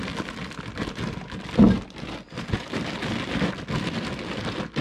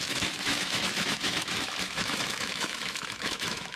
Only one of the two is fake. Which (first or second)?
second